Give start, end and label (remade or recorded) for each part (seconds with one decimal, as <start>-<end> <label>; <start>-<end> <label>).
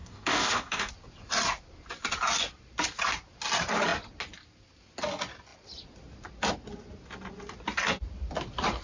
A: 0.0-0.9 remade; 0.9-8.8 recorded